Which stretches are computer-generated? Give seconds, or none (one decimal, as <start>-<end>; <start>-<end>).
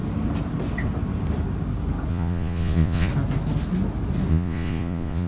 2.1-3.1; 4.3-5.3